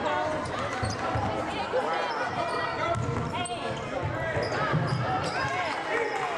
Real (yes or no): yes